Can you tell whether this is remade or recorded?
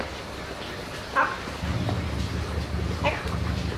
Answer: recorded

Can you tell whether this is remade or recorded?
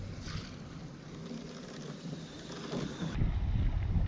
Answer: recorded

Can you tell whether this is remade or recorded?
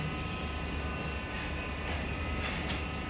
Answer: recorded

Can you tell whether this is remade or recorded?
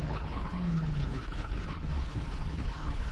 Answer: remade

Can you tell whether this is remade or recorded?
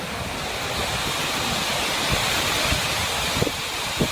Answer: recorded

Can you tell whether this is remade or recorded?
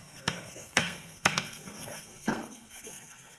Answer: remade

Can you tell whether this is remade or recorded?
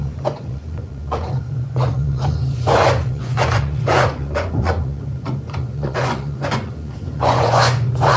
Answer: remade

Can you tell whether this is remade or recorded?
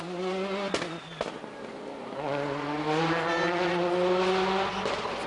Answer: recorded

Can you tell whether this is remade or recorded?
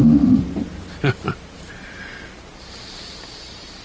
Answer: recorded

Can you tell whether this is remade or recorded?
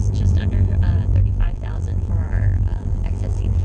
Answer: remade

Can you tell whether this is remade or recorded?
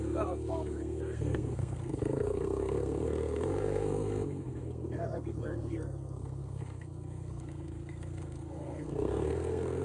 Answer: remade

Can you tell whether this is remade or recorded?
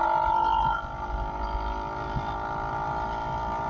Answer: recorded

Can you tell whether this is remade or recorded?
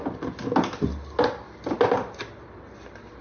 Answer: recorded